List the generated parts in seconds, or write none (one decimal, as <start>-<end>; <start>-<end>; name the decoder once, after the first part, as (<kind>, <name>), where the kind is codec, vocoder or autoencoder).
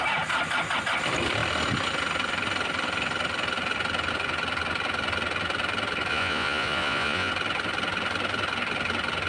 6.1-7.3 (vocoder, Vocos)